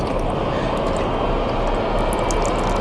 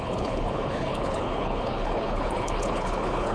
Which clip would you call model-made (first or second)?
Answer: second